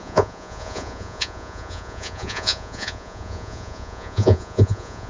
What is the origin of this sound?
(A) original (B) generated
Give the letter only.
B